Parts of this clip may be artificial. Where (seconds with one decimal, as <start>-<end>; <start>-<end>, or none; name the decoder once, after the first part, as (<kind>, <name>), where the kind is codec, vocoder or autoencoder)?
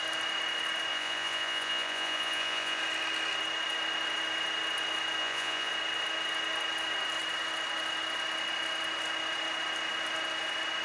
0.9-2.8 (vocoder, Vocos); 5.2-5.7